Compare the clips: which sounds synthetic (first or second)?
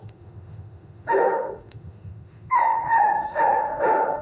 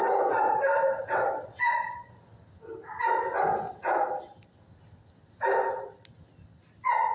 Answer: first